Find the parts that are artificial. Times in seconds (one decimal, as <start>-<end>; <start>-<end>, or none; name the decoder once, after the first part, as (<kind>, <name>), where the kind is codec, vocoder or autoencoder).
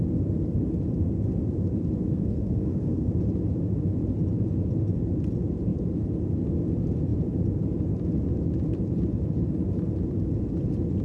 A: 2.1-3.1 (codec, SNAC)